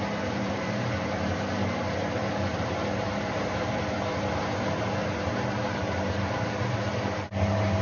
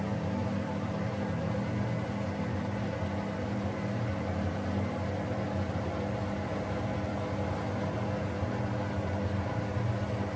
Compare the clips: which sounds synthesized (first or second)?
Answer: first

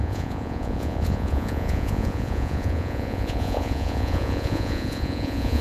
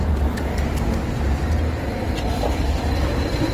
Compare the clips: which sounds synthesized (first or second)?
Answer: first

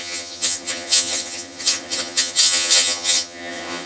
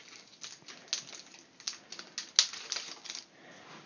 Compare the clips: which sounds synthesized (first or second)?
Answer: first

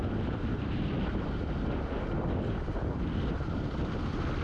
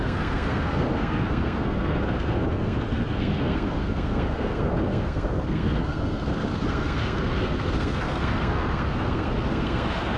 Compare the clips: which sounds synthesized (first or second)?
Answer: second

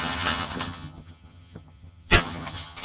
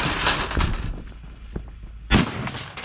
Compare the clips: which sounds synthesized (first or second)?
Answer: first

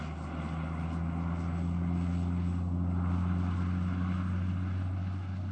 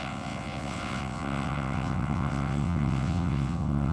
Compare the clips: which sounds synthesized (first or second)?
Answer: second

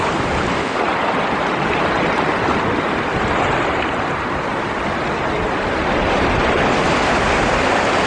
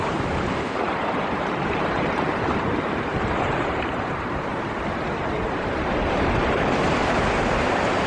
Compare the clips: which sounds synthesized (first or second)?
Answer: second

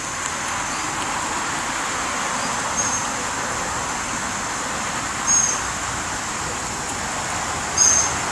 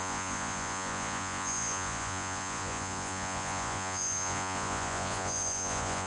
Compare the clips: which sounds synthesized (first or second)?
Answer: second